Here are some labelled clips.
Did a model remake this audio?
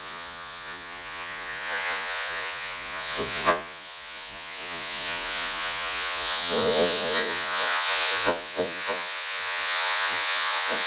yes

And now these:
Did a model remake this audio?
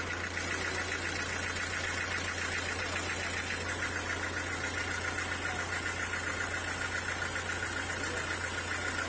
no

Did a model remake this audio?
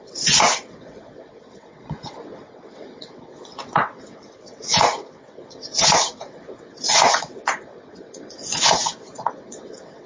yes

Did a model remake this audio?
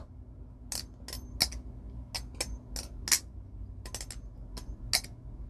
no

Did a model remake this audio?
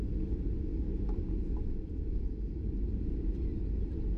no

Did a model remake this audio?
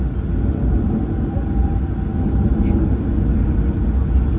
no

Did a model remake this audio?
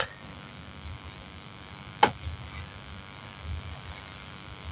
no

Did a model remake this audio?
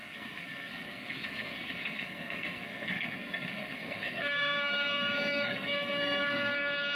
yes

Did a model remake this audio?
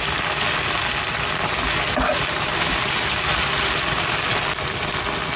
no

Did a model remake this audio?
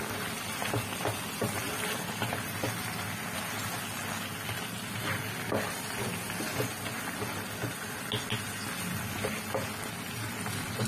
no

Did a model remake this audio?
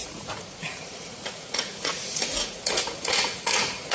yes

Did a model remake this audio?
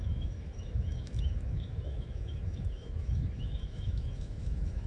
yes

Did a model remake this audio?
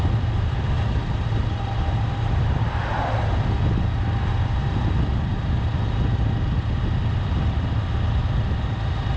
no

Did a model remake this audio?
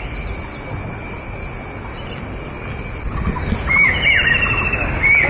no